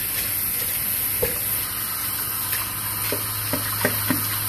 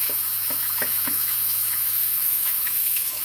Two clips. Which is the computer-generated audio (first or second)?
second